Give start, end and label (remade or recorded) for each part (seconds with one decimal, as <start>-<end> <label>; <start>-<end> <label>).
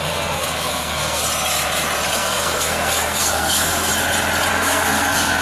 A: 0.0-1.2 remade; 1.2-2.1 recorded; 2.1-3.9 remade; 3.9-4.5 recorded; 4.5-5.4 remade